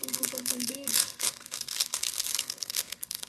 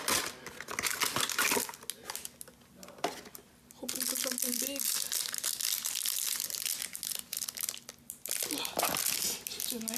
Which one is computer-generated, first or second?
first